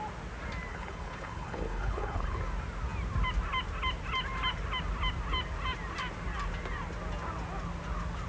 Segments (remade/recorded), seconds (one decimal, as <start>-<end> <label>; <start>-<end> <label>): 0.0-0.7 recorded; 0.7-2.4 remade; 2.4-8.3 recorded